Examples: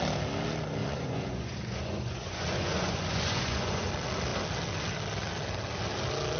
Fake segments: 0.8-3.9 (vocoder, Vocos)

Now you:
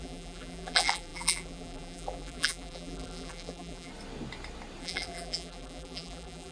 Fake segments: 0.0-3.9 (vocoder, BigVGAN v2); 4.8-6.5

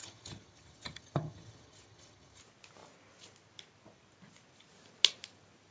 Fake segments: 0.0-2.4 (vocoder, HiFi-GAN)

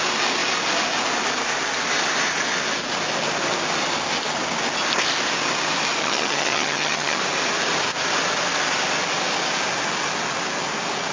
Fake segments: 6.0-7.2 (vocoder, HiFi-GAN)

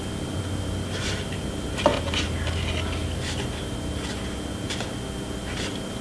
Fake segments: none

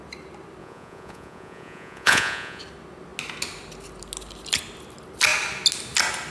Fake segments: 0.6-2.6 (vocoder, Vocos)